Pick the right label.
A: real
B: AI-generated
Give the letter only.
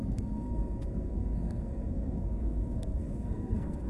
B